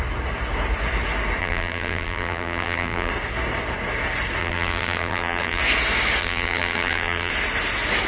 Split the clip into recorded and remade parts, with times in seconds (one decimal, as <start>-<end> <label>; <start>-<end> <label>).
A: 0.0-1.4 recorded; 1.4-3.1 remade; 3.1-4.4 recorded; 4.4-5.6 remade; 5.6-6.2 recorded; 6.2-7.3 remade; 7.3-8.1 recorded